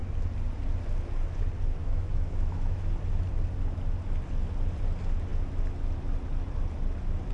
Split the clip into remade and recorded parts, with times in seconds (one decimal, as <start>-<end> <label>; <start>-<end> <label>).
0.0-1.8 recorded; 1.8-2.9 remade; 2.9-7.3 recorded